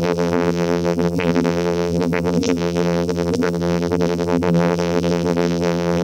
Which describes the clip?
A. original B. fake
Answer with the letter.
B